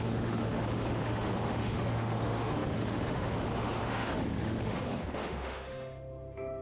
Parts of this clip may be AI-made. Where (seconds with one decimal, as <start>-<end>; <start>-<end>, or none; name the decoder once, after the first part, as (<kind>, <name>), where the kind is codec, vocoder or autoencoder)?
0.0-6.6 (autoencoder, DAC-VAE)